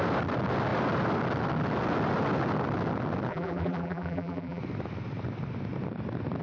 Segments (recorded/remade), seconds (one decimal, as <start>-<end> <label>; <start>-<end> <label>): 0.0-3.3 recorded; 3.3-4.6 remade; 4.6-6.4 recorded